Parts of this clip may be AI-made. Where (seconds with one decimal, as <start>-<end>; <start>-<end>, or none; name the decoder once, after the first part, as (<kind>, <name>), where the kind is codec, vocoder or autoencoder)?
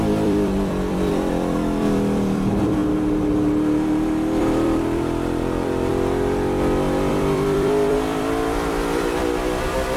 0.0-2.8 (vocoder, BigVGAN v2); 4.4-5.9; 7.1-10.0